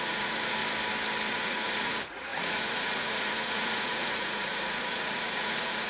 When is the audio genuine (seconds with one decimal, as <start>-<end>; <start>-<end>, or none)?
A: 0.6-1.3

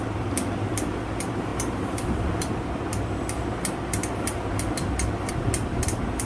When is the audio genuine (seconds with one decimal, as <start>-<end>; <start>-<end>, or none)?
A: 0.0-6.3

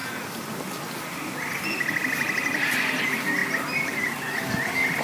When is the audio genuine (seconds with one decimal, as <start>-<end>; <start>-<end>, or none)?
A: 0.0-5.0

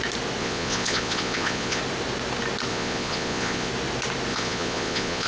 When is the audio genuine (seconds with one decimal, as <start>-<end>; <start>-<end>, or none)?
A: 0.0-0.4; 1.8-2.7; 3.7-4.3

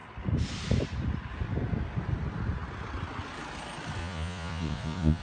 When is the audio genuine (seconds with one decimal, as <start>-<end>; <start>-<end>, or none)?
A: 0.0-4.0

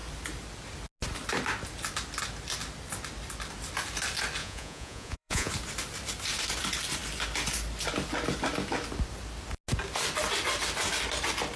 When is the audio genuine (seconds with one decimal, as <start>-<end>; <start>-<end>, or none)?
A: 0.0-4.4; 5.5-11.6